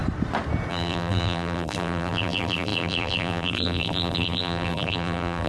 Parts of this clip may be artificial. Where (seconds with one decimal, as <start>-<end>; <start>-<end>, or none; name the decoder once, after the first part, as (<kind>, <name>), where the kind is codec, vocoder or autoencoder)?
0.7-5.5 (vocoder, BigVGAN v2)